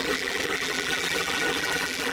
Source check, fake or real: fake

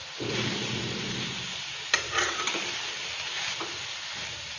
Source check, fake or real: fake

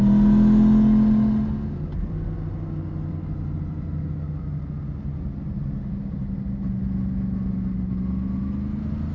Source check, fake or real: real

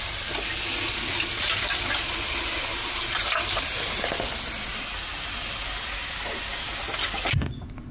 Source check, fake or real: real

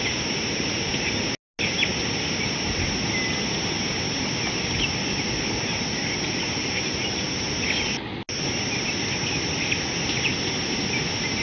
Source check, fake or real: real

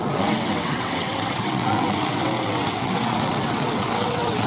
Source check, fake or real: fake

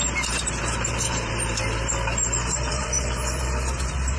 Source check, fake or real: fake